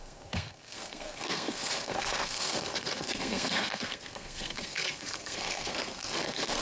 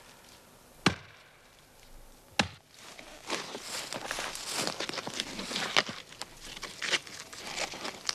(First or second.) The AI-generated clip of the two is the first